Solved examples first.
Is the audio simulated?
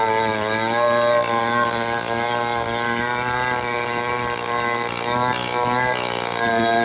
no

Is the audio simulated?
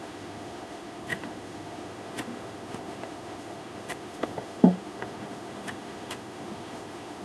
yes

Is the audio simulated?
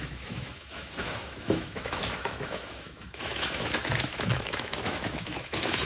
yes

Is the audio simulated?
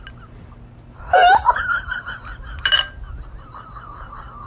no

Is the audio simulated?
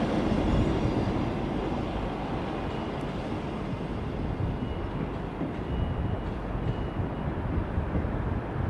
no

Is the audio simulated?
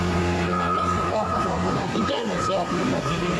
yes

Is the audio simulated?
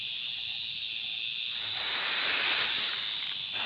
no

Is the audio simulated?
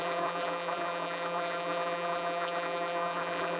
yes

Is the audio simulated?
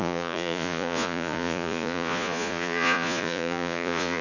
yes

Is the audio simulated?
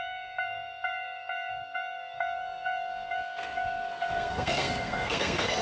yes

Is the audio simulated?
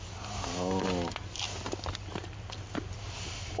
no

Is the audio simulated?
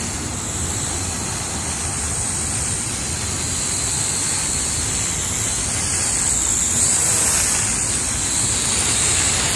no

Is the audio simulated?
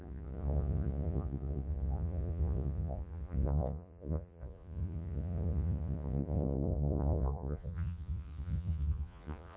yes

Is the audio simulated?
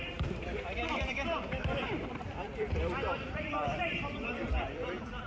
yes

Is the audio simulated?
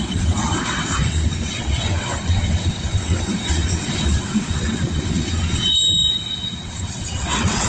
yes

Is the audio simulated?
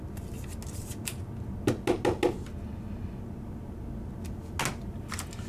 no